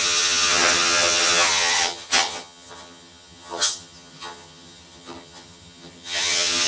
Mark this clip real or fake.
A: fake